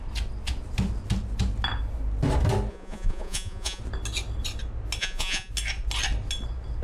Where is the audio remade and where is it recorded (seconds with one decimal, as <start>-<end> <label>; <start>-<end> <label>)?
0.0-2.7 recorded; 2.7-3.8 remade; 3.8-5.0 recorded; 5.0-5.5 remade; 5.5-6.8 recorded